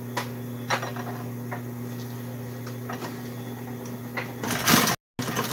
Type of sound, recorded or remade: recorded